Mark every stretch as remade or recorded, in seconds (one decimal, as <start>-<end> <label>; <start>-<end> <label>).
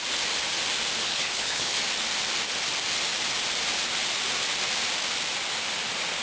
0.0-1.0 recorded; 1.0-1.8 remade; 1.8-6.2 recorded